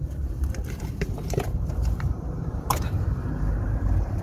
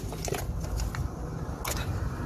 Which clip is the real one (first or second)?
second